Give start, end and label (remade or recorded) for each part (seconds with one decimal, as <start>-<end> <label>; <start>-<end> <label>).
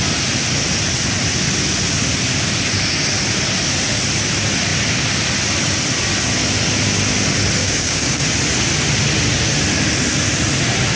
0.0-7.6 recorded; 7.6-8.2 remade; 8.2-11.0 recorded